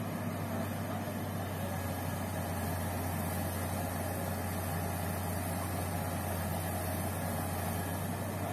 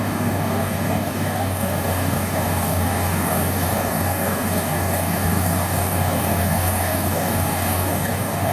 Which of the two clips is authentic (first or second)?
first